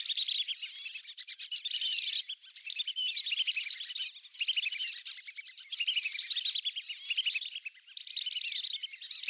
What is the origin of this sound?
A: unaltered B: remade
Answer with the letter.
A